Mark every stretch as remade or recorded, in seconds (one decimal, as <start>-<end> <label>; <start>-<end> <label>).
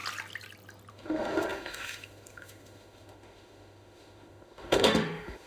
0.0-0.9 recorded; 0.9-5.5 remade